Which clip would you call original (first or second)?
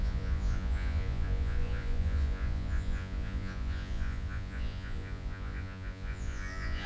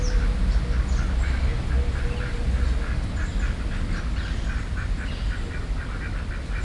second